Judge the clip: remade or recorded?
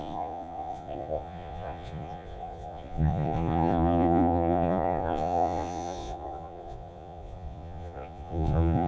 remade